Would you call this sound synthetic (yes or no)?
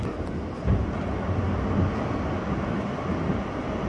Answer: no